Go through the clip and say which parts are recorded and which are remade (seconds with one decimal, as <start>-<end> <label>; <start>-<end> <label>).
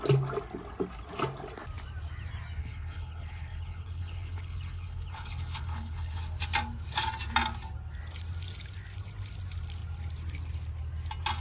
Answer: 0.0-2.6 recorded; 2.6-6.2 remade; 6.2-11.4 recorded